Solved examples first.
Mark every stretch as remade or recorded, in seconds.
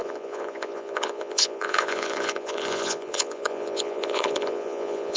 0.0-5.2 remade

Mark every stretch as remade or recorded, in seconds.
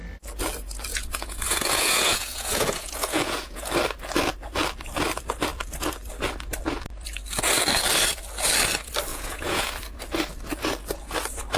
0.0-0.9 recorded; 0.9-3.7 remade; 3.7-9.1 recorded; 9.1-9.7 remade; 9.7-11.6 recorded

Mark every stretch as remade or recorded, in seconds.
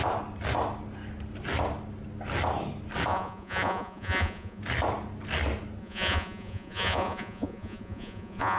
0.0-3.1 recorded; 3.1-4.6 remade; 4.6-5.8 recorded; 5.8-8.6 remade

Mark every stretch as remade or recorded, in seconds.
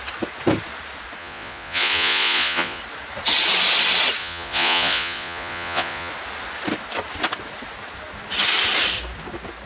0.0-1.2 recorded; 1.2-2.8 remade; 2.8-4.2 recorded; 4.2-6.1 remade; 6.1-9.7 recorded